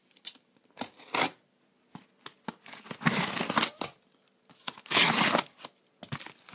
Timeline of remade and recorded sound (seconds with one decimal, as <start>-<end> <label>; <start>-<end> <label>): 0.0-6.5 recorded